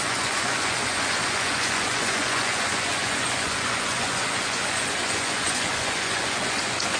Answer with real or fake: fake